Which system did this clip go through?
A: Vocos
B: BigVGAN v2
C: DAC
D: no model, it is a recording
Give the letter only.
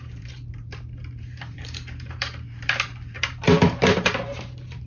B